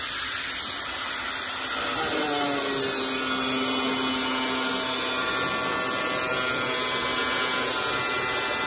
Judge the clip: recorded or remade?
recorded